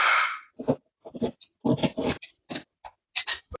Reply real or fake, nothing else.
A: real